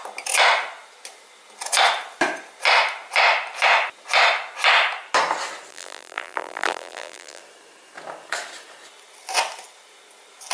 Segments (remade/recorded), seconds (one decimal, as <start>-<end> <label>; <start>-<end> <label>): 0.0-5.7 recorded; 5.7-7.4 remade; 7.4-10.5 recorded